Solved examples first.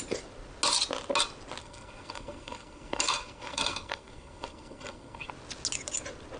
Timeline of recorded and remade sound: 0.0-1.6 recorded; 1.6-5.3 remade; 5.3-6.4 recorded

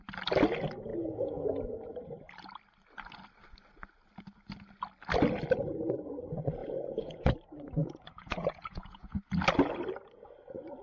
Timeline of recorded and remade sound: 0.0-0.9 recorded; 0.9-1.6 remade; 1.6-6.6 recorded; 6.6-7.3 remade; 7.3-7.8 recorded; 7.8-9.2 remade; 9.2-10.8 recorded

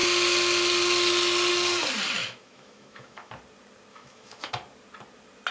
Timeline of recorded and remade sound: 0.0-2.2 recorded; 2.2-3.3 remade; 3.3-3.9 recorded; 3.9-4.5 remade; 4.5-5.5 recorded

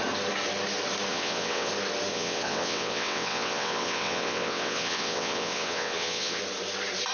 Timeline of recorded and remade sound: 0.0-1.1 recorded; 1.1-1.7 remade; 1.7-2.1 recorded; 2.1-6.4 remade; 6.4-7.1 recorded

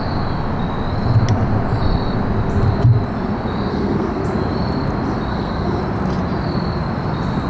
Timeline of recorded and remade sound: 0.0-3.7 recorded; 3.7-4.2 remade; 4.2-5.3 recorded; 5.3-5.8 remade; 5.8-7.5 recorded

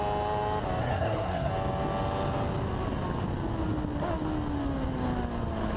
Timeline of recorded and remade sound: 0.0-0.8 recorded; 0.8-1.5 remade; 1.5-5.8 recorded

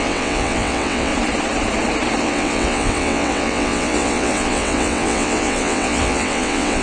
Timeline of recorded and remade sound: 0.0-1.1 remade; 1.1-2.2 recorded; 2.2-6.8 remade